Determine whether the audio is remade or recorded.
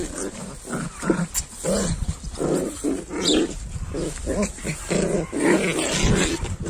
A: recorded